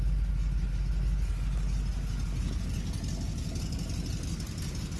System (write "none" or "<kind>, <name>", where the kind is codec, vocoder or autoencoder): none